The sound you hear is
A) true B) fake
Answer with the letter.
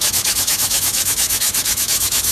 B